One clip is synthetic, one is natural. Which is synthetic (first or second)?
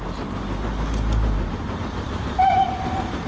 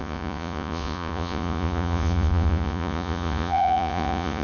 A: second